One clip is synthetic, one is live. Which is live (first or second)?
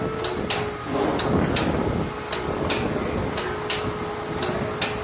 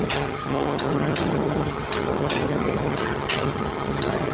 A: first